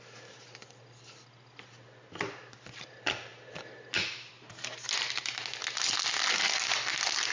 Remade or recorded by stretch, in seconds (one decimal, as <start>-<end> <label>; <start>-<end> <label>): 0.0-7.3 recorded